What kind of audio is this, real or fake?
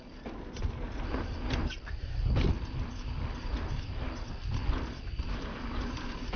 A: real